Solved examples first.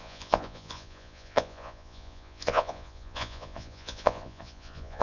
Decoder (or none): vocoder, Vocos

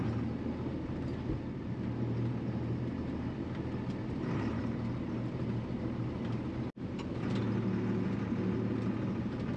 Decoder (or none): none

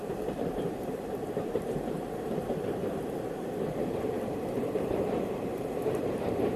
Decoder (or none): vocoder, BigVGAN v2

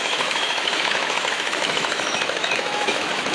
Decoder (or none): autoencoder, DAC-VAE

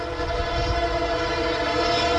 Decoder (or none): none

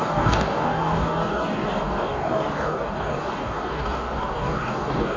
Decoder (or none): codec, DAC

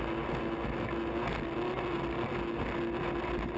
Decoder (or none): none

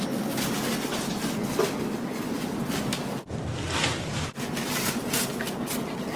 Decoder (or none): none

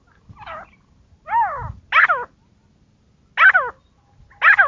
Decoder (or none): none